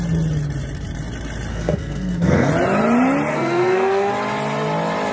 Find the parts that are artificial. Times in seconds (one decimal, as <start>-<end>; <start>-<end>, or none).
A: 1.5-2.5; 3.3-4.1